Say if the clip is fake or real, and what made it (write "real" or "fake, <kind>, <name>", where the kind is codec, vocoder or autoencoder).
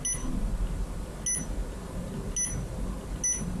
real